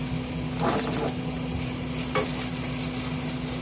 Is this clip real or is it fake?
real